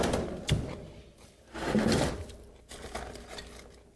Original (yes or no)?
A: yes